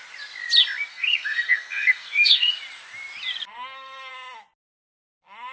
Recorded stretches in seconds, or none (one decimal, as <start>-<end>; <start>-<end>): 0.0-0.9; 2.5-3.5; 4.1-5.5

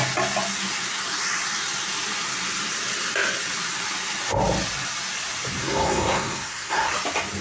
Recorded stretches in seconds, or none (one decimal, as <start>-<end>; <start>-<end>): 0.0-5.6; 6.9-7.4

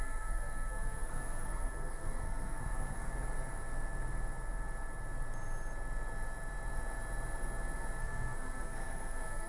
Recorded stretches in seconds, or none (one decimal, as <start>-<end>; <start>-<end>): 3.1-8.0